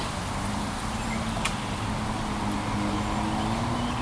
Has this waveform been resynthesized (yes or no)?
no